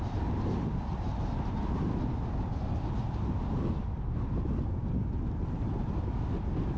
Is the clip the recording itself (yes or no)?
yes